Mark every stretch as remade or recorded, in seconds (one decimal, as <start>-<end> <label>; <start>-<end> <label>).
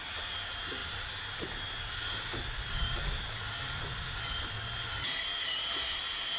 0.0-6.4 recorded